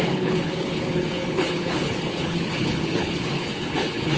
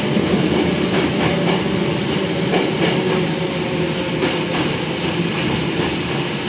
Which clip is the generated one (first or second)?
first